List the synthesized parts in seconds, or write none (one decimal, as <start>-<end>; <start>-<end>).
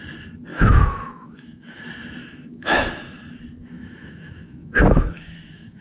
0.5-1.8; 2.2-2.9; 3.6-5.8